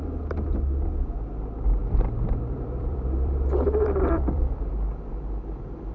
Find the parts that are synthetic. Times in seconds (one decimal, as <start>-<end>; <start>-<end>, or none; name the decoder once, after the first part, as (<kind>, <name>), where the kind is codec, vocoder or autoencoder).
1.8-4.7 (vocoder, BigVGAN v2)